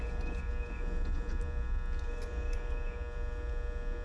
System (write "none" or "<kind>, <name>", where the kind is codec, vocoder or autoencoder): none